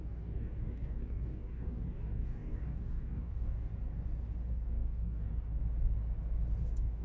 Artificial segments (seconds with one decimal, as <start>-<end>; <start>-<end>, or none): 0.0-3.7; 4.5-5.6; 6.6-7.0